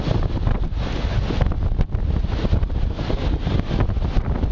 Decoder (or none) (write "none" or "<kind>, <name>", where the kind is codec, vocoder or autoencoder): none